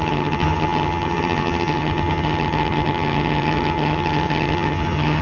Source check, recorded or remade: remade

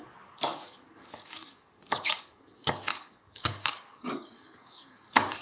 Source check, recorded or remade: remade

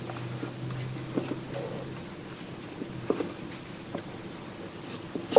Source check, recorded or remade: recorded